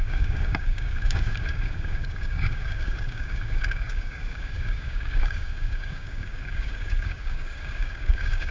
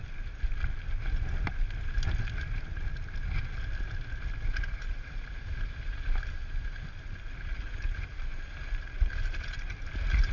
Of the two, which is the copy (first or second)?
first